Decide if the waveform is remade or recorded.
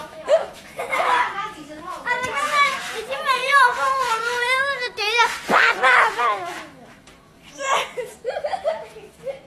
remade